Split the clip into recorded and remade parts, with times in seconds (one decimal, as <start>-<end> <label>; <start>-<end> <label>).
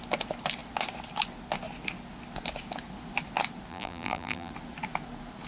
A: 0.0-3.7 recorded; 3.7-4.5 remade; 4.5-5.5 recorded